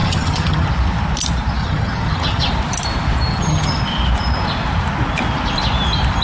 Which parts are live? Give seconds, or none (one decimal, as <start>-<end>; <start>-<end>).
0.7-1.6; 2.5-3.3; 3.8-6.2